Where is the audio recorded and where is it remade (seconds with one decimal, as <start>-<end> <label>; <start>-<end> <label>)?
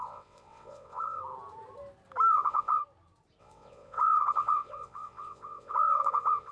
0.0-1.2 remade; 1.2-2.3 recorded; 2.3-2.8 remade; 2.8-3.4 recorded; 3.4-6.5 remade